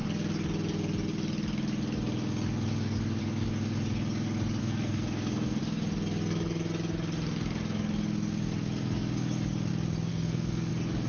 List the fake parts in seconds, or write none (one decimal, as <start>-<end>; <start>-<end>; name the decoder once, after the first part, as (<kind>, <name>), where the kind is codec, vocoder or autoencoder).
4.6-5.6 (codec, SNAC); 10.1-10.7